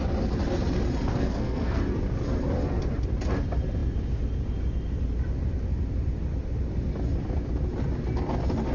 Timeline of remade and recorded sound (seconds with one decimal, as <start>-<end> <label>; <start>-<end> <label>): 0.0-1.1 recorded; 1.1-1.8 remade; 1.8-8.7 recorded